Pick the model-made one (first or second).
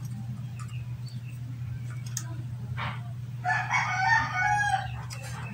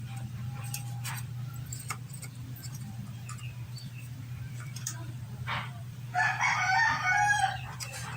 second